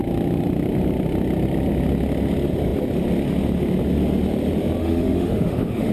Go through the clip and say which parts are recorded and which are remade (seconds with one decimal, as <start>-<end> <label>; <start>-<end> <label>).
0.0-4.8 recorded; 4.8-5.9 remade